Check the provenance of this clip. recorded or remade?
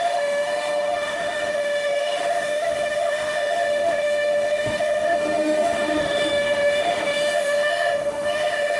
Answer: remade